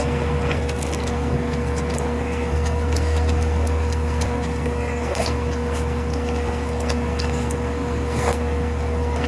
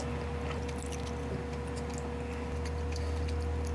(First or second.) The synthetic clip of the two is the first